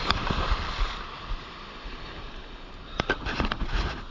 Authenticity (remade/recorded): recorded